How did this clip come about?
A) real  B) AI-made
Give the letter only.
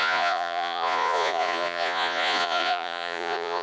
B